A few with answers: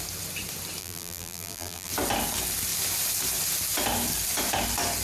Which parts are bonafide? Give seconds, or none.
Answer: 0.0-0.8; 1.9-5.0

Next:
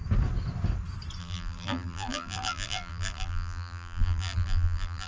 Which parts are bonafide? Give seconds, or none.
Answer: 0.0-1.2